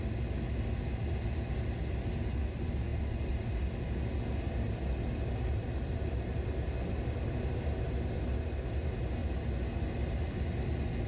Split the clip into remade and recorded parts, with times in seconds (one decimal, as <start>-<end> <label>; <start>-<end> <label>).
0.0-11.1 recorded